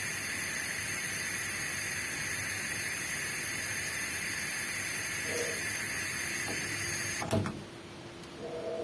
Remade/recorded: recorded